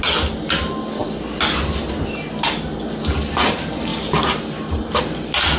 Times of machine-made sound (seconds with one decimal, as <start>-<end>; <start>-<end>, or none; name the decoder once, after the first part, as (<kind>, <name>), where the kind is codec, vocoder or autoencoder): 3.9-5.0 (vocoder, BigVGAN v2)